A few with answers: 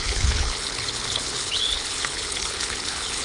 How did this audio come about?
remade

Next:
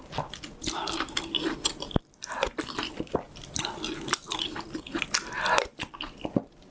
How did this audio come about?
recorded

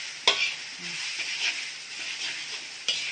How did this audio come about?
recorded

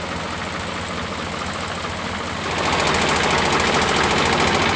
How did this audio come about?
recorded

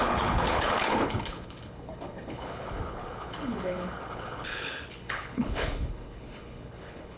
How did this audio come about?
remade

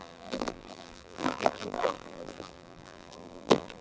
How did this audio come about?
remade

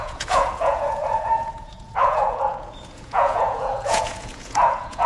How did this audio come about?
remade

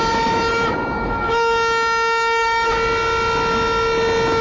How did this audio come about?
recorded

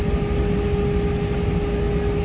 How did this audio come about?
recorded